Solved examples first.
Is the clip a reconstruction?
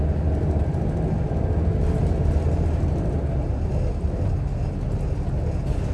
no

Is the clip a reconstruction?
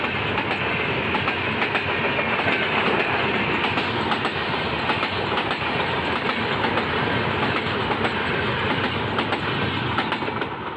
no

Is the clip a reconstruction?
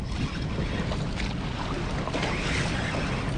no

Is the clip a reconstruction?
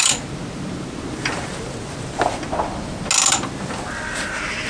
no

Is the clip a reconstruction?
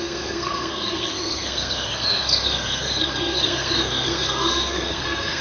yes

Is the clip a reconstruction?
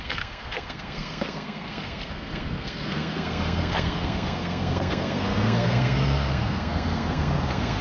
yes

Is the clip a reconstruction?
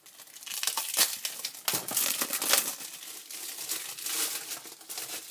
no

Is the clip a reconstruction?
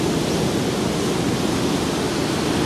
no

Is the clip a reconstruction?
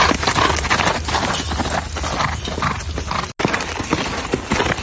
no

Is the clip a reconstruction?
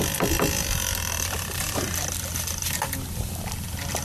no